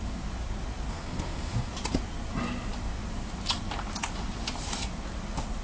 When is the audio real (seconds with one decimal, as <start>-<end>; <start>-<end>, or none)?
0.0-0.9; 1.7-5.6